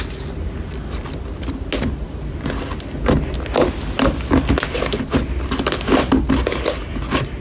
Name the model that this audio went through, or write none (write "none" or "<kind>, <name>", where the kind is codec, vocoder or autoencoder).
none